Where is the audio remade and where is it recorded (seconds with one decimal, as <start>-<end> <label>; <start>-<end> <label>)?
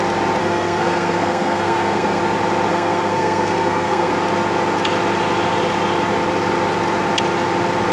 0.0-0.4 recorded; 0.4-2.2 remade; 2.2-2.7 recorded; 2.7-4.1 remade; 4.1-7.9 recorded